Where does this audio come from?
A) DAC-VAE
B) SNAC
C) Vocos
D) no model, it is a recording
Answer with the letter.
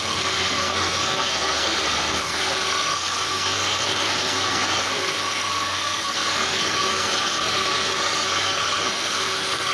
B